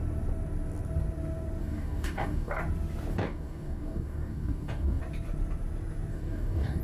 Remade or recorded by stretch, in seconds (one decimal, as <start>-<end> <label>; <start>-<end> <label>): 0.0-1.6 recorded; 1.6-2.6 remade; 2.6-3.1 recorded; 3.1-5.0 remade; 5.0-6.1 recorded; 6.1-6.8 remade